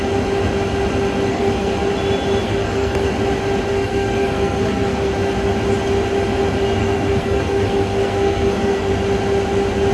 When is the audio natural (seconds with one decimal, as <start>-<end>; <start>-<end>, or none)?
0.0-1.3; 1.9-2.4; 3.1-3.7; 5.1-6.8; 8.9-9.9